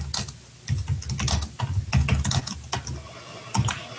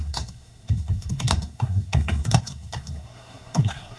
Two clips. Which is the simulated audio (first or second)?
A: second